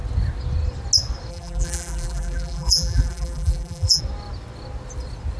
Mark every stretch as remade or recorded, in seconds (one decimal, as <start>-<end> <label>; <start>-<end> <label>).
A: 0.0-1.3 recorded; 1.3-4.0 remade; 4.0-5.4 recorded